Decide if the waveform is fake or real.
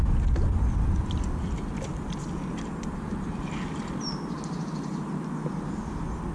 real